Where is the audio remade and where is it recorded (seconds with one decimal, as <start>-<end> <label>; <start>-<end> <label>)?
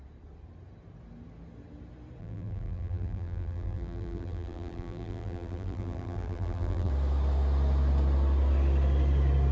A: 0.0-2.2 recorded; 2.2-6.9 remade; 6.9-9.5 recorded